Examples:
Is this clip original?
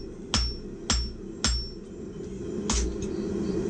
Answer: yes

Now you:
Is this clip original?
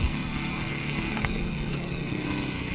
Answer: no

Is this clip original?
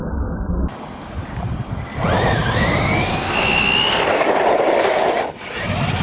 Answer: yes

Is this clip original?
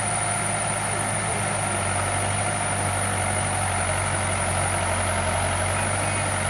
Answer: yes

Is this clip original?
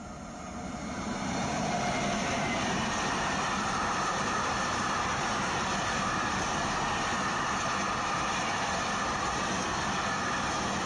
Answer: yes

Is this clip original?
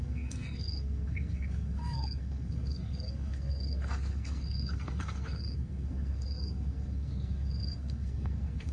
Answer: no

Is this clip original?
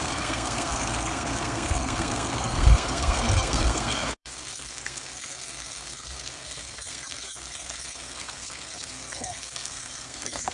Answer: no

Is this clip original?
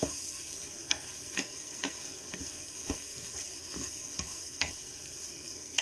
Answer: no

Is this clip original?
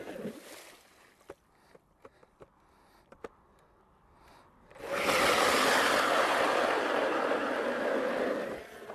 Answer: yes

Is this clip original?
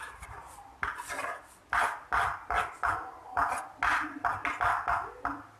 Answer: yes